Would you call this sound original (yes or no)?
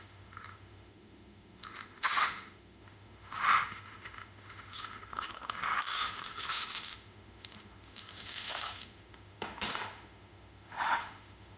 no